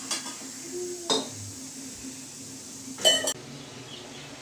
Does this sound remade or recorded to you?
recorded